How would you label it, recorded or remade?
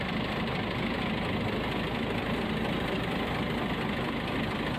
recorded